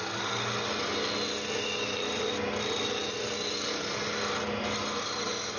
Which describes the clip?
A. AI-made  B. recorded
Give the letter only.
B